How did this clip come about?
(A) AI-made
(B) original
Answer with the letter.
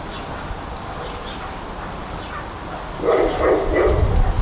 B